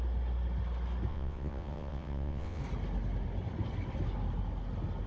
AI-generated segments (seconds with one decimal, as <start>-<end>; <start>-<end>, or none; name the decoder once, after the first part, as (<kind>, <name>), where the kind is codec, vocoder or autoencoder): 1.1-2.6 (vocoder, WaveNeXt)